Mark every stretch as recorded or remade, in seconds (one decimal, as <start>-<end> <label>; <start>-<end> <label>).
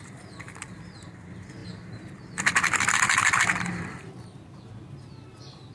0.0-1.6 recorded; 1.6-5.0 remade; 5.0-5.7 recorded